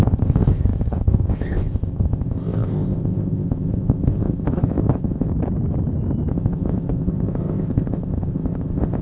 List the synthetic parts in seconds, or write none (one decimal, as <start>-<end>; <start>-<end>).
0.0-5.3; 6.3-9.0